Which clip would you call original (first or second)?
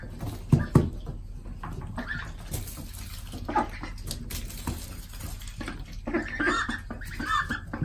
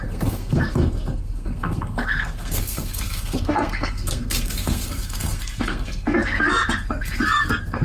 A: first